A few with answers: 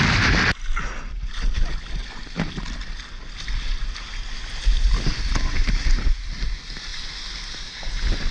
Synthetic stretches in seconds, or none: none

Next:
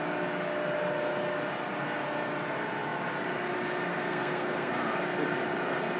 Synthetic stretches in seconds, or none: 3.9-4.7

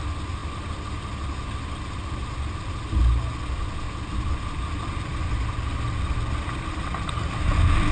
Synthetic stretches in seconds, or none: none

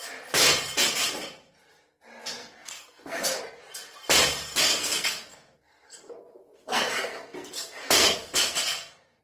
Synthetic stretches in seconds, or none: 2.4-3.4; 4.7-9.2